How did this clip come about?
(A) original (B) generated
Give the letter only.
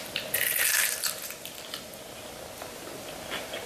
A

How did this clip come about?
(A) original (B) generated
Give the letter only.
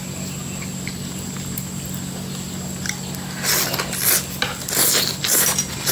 A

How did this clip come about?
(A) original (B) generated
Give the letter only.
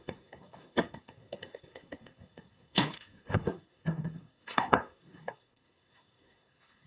B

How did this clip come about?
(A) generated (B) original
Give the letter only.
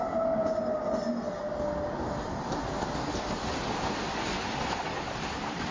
B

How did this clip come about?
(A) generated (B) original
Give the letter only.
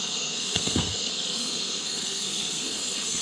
A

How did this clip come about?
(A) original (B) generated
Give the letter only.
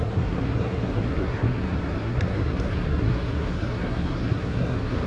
B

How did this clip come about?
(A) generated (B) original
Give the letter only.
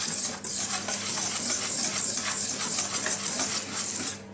B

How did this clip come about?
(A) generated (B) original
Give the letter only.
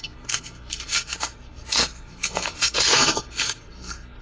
A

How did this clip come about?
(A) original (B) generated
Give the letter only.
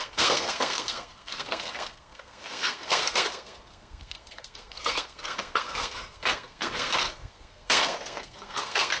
B